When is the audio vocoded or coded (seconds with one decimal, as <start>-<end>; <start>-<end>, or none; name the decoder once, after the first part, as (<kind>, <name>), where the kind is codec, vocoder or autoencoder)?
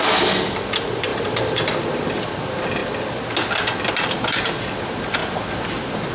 1.1-2.2 (vocoder, BigVGAN v2); 5.2-6.1